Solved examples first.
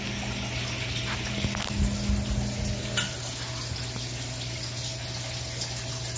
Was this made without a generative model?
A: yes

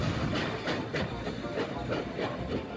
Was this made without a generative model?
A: yes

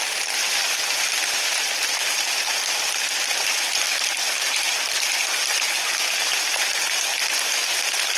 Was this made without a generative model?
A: no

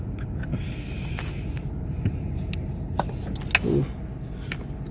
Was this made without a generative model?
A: yes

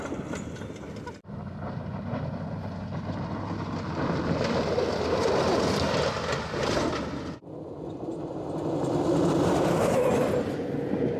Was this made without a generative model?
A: yes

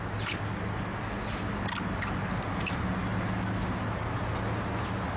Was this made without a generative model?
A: yes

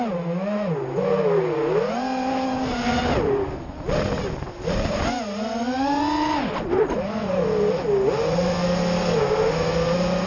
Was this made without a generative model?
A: yes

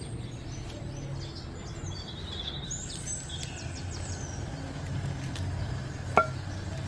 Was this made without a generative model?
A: yes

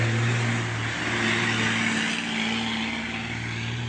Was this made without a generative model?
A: yes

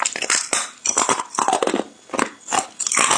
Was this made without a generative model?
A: yes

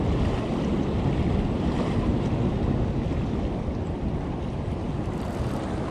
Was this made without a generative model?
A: yes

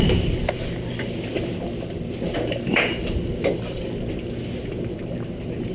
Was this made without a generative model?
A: yes